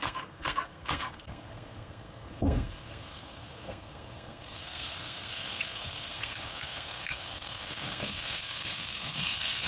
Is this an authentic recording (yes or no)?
no